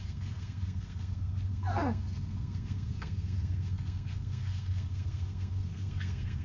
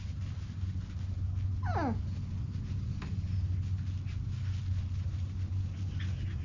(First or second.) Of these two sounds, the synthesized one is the first